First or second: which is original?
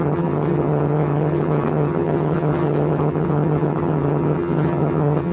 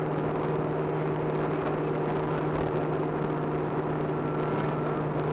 second